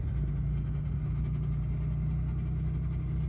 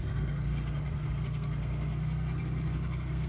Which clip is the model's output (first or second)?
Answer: second